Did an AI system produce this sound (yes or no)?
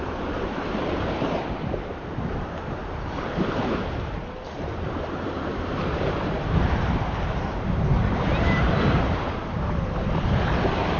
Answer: yes